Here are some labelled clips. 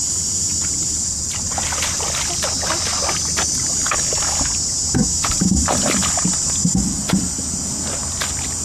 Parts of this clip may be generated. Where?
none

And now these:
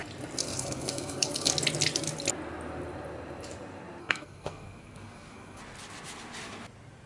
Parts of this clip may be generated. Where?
0.4-1.5 (codec, SNAC); 4.0-5.6

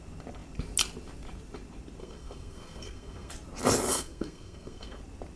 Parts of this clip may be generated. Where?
2.0-3.3 (codec, SNAC); 3.9-5.0

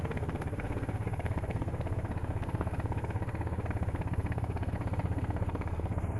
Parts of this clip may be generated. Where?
0.0-6.2 (codec, SNAC)

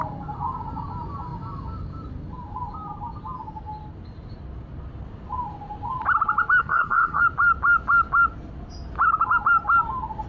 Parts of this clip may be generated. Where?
6.6-7.2 (codec, SNAC)

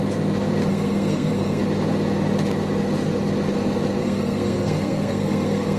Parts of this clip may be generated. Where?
0.7-1.6 (codec, SNAC); 4.0-5.8

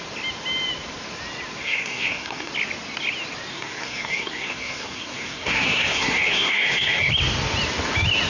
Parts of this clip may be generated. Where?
1.6-2.5 (codec, SNAC); 3.5-7.1

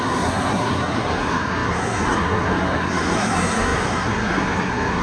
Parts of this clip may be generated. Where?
0.0-5.0 (codec, SNAC)